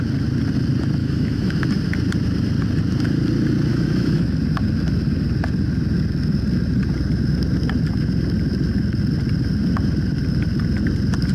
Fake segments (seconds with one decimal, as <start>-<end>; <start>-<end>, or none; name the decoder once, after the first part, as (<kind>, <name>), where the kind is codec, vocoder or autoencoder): 1.0-1.5 (autoencoder, DAC-VAE); 3.7-4.4